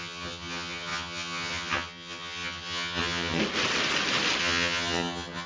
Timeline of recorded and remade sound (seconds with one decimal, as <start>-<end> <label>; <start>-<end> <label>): 0.0-3.4 remade; 3.4-4.4 recorded; 4.4-5.5 remade